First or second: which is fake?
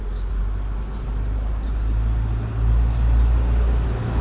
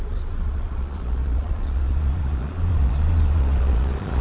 second